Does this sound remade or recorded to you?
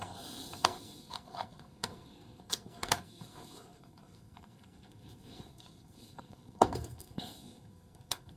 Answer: remade